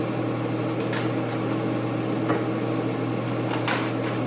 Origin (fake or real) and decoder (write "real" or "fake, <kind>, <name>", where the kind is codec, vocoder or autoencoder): real